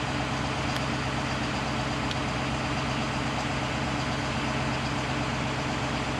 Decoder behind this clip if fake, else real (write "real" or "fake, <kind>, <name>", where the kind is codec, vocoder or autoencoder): real